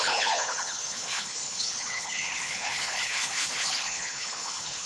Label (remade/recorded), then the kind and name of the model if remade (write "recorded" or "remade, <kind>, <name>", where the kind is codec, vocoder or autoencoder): remade, codec, HILCodec